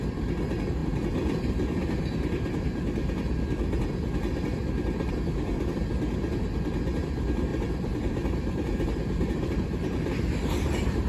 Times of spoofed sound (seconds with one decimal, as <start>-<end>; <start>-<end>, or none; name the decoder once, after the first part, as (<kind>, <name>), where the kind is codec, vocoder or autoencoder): 7.5-10.1 (vocoder, BigVGAN v2)